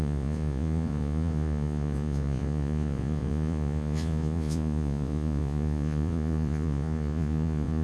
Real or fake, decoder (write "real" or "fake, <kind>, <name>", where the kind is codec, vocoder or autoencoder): fake, vocoder, Vocos